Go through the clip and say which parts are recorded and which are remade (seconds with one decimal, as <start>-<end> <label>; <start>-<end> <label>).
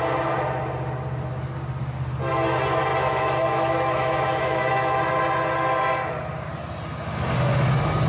0.0-2.9 recorded; 2.9-5.0 remade; 5.0-8.1 recorded